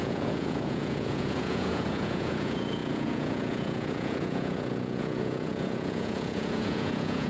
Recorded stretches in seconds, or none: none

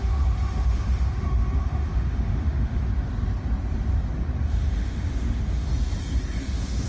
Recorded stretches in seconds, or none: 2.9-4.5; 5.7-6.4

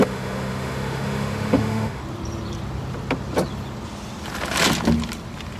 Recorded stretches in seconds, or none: 2.0-5.6